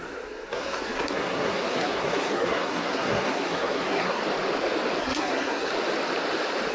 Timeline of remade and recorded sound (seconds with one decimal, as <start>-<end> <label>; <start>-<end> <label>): 0.0-4.2 remade; 4.2-5.0 recorded; 5.0-5.7 remade; 5.7-6.7 recorded